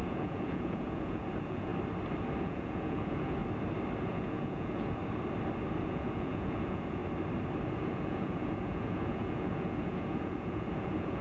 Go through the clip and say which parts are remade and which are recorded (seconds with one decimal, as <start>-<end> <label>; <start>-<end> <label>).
0.0-1.7 remade; 1.7-2.4 recorded; 2.4-3.4 remade; 3.4-4.0 recorded; 4.0-5.0 remade; 5.0-5.8 recorded; 5.8-7.0 remade; 7.0-7.7 recorded; 7.7-11.2 remade